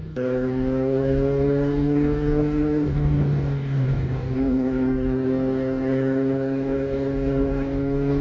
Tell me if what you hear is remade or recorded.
remade